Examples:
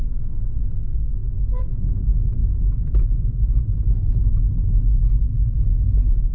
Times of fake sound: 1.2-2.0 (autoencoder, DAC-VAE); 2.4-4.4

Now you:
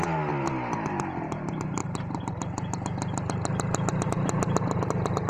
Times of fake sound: none

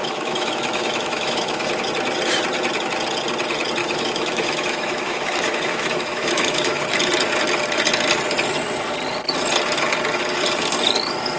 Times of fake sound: 0.0-1.7 (autoencoder, DAC-VAE); 3.8-6.8

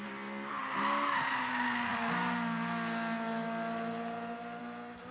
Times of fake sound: none

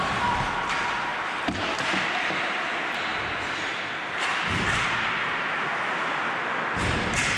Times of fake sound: none

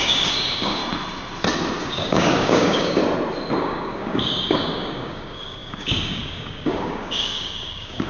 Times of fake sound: 0.0-0.8 (codec, DAC); 1.8-3.0; 3.6-8.1

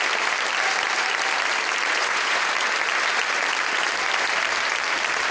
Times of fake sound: 2.0-2.5 (vocoder, Vocos)

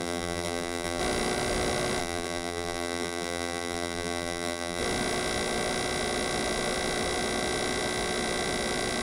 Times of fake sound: 0.0-1.0 (vocoder, BigVGAN v2); 2.0-4.8